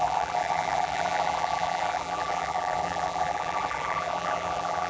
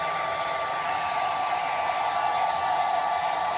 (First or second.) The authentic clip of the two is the second